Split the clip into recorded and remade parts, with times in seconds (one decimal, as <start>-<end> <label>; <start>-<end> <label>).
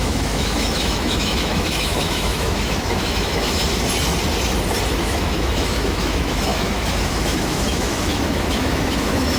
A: 0.0-3.6 remade; 3.6-5.0 recorded; 5.0-9.4 remade